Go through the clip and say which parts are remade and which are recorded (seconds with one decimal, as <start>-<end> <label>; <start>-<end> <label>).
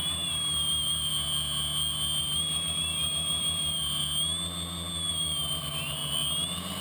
0.0-1.1 remade; 1.1-2.2 recorded; 2.2-4.0 remade; 4.0-5.1 recorded; 5.1-6.0 remade; 6.0-6.8 recorded